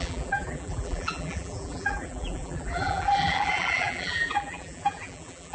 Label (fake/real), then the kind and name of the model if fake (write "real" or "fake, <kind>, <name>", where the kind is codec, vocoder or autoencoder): fake, vocoder, BigVGAN v2